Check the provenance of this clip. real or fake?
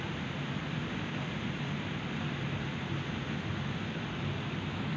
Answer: real